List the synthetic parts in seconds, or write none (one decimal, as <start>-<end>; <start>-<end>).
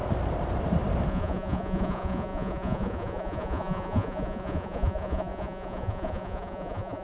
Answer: 1.1-7.0